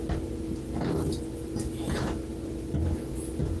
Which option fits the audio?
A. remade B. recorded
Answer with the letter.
B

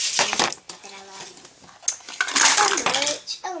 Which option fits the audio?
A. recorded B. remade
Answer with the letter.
A